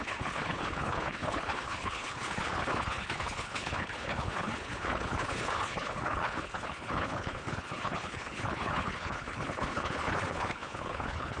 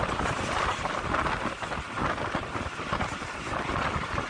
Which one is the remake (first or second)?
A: first